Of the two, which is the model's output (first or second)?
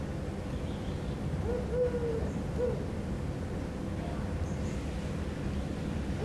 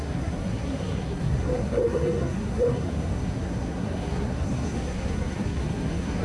second